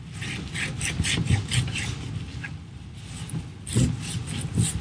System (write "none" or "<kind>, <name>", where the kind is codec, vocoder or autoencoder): none